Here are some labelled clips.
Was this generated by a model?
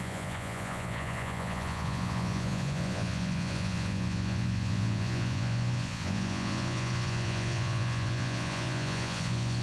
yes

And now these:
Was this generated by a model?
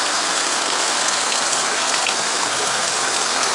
yes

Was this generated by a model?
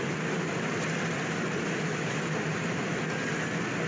no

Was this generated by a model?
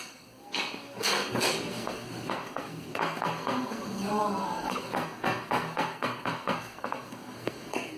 yes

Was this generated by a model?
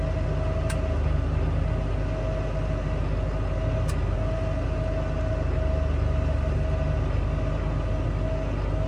no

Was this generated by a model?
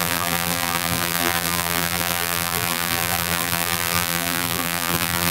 yes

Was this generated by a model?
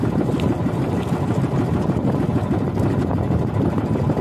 no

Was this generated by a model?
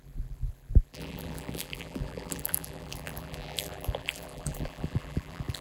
yes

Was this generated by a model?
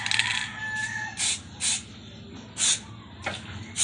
no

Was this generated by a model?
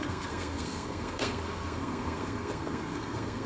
yes